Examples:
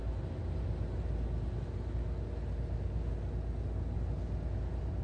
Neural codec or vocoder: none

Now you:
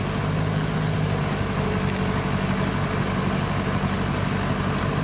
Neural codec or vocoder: none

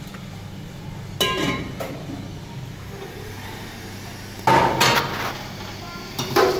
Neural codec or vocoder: none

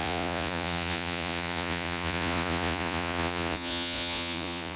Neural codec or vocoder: vocoder, Vocos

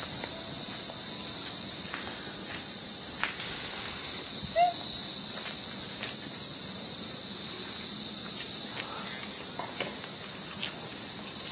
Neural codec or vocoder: none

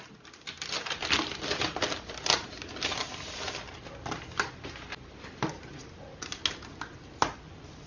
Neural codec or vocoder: none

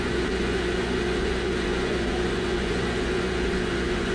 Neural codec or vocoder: vocoder, Vocos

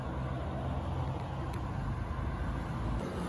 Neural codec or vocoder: none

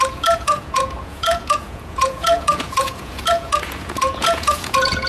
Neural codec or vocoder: vocoder, Vocos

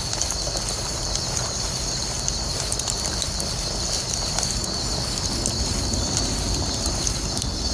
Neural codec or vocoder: none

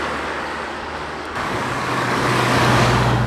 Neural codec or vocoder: codec, DAC